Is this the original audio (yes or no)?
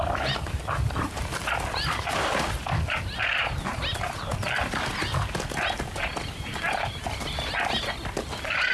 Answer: yes